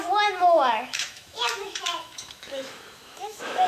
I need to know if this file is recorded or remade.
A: remade